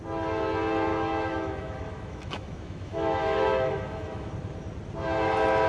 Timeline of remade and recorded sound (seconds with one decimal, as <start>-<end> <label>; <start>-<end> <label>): 0.0-0.9 recorded; 0.9-4.3 remade; 4.3-5.7 recorded